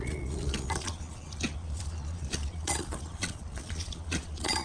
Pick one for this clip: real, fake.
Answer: fake